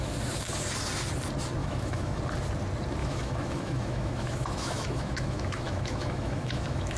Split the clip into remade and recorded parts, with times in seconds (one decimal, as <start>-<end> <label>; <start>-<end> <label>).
0.0-1.6 recorded; 1.6-2.2 remade; 2.2-3.0 recorded; 3.0-7.0 remade